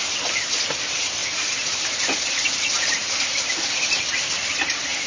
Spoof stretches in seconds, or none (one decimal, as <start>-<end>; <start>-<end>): none